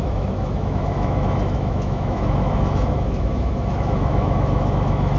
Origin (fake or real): fake